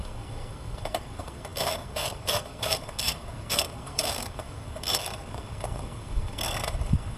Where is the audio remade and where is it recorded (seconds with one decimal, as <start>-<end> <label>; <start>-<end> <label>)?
0.0-7.2 remade